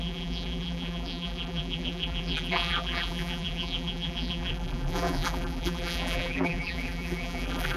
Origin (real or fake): fake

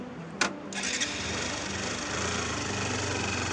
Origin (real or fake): real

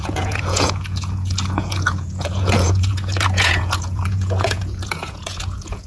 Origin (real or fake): fake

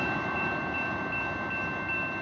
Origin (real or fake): real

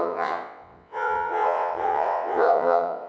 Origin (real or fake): fake